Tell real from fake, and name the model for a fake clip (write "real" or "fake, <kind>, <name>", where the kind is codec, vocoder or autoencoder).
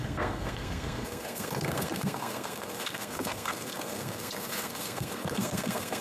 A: fake, codec, SNAC